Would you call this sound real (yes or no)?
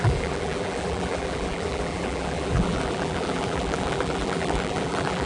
no